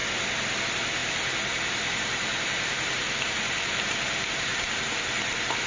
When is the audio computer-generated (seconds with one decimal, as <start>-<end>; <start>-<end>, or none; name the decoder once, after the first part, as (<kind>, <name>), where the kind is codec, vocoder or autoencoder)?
0.0-0.6 (vocoder, BigVGAN v2); 1.0-3.9; 4.5-5.0